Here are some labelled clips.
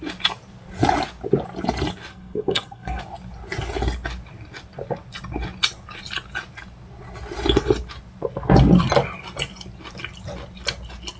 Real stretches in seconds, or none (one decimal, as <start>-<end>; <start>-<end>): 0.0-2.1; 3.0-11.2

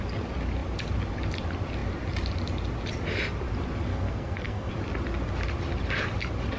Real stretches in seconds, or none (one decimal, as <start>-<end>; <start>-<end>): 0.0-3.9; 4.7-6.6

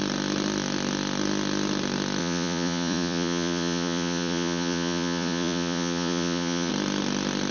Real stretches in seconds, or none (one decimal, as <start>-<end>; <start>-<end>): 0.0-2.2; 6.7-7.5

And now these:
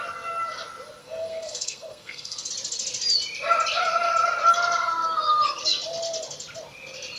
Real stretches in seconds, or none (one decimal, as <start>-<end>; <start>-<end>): 0.0-1.0; 2.5-7.2

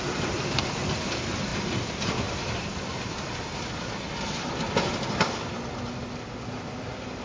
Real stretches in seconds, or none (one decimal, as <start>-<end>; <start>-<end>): 0.0-7.2

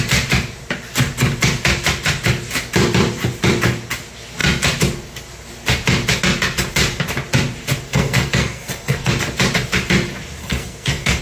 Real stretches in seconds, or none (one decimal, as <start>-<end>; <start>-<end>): 0.0-7.9; 9.1-10.4

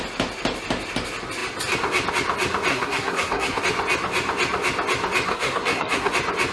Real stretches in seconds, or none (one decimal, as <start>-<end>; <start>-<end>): 0.0-2.7; 3.6-5.3; 6.1-6.5

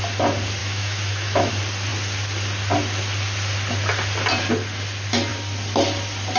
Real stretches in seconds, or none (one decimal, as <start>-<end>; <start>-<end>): 0.0-0.6; 1.5-6.4